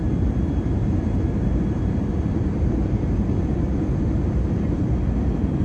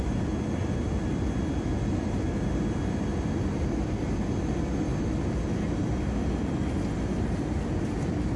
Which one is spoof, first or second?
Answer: first